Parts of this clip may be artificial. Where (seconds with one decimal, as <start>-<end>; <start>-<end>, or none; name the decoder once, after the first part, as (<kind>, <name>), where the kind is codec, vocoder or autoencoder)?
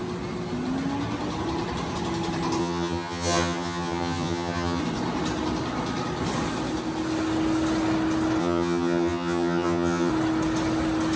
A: 2.6-4.8 (vocoder, HiFi-GAN); 8.4-10.1